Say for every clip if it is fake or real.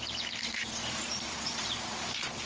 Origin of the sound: fake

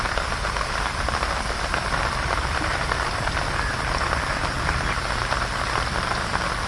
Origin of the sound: fake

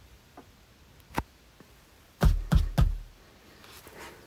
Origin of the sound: real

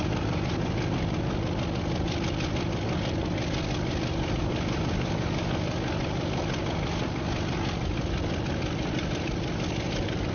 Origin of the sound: real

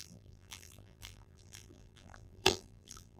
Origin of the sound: fake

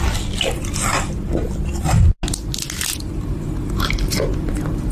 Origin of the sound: real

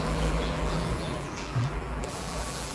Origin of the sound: fake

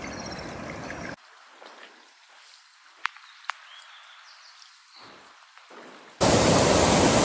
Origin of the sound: real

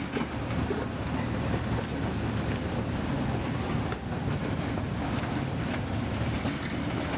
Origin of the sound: fake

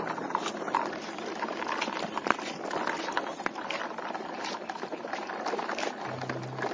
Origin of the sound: fake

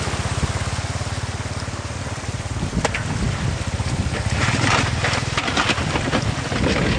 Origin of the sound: real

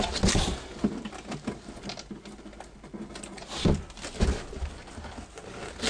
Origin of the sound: real